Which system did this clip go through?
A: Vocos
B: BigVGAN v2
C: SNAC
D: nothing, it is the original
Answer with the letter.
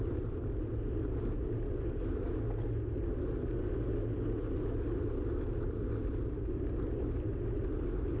D